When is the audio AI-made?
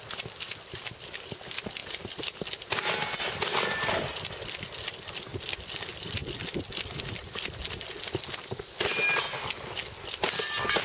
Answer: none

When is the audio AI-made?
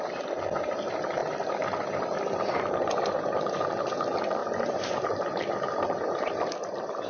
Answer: 1.2-2.7 (vocoder, BigVGAN v2)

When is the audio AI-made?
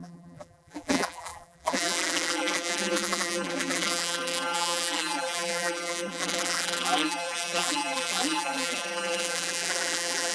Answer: 0.0-10.3 (vocoder, BigVGAN v2)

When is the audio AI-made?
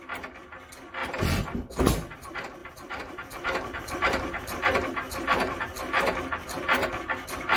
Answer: 1.0-1.8 (vocoder, BigVGAN v2); 2.6-5.6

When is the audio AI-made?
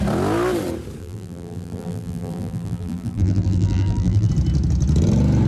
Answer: 1.0-4.3 (vocoder, BigVGAN v2)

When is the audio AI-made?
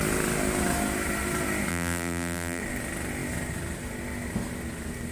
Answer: 1.7-2.6 (vocoder, BigVGAN v2)